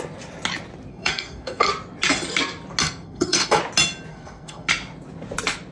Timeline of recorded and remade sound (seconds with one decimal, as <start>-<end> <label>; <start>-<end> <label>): 0.0-0.9 recorded; 0.9-1.7 remade; 1.7-2.8 recorded; 2.8-3.6 remade; 3.6-4.1 recorded; 4.1-4.7 remade; 4.7-5.7 recorded